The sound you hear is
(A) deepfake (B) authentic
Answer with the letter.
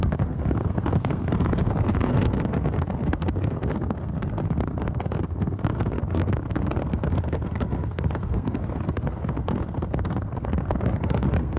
A